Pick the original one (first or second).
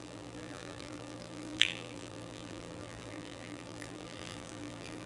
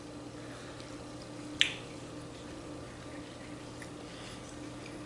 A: second